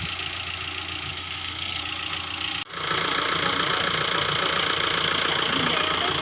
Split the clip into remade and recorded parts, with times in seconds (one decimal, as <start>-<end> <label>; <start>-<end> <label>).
0.0-1.1 recorded; 1.1-1.8 remade; 1.8-6.2 recorded